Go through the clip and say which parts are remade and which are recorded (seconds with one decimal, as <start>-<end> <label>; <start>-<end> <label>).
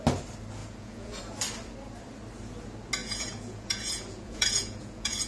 0.0-0.6 recorded; 0.6-1.2 remade; 1.2-3.0 recorded; 3.0-5.3 remade